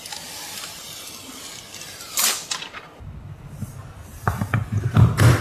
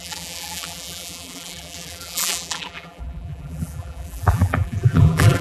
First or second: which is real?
first